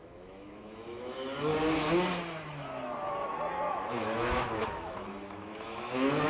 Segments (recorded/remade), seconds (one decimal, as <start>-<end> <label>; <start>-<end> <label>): 0.0-1.5 remade; 1.5-3.7 recorded; 3.7-6.3 remade